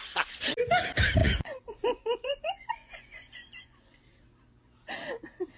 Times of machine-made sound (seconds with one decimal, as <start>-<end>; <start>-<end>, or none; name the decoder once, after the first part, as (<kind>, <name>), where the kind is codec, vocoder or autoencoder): 1.2-4.0 (vocoder, Vocos)